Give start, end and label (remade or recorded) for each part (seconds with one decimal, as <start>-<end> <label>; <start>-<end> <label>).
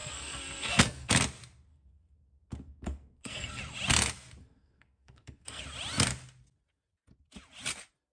0.0-1.1 remade; 1.1-1.7 recorded; 1.7-3.6 remade; 3.6-4.4 recorded; 4.4-5.6 remade; 5.6-8.1 recorded